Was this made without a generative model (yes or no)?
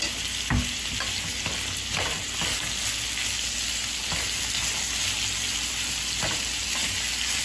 yes